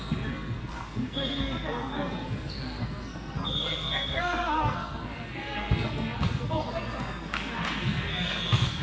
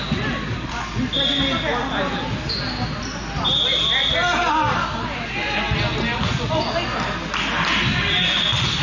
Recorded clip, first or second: second